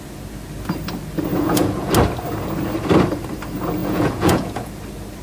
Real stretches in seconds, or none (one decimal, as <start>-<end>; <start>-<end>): 0.0-1.3; 1.9-3.8; 4.7-5.2